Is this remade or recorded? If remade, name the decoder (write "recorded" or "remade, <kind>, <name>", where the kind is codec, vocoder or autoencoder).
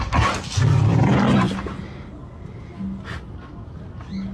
recorded